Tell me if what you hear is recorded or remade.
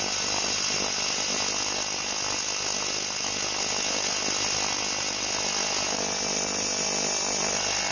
recorded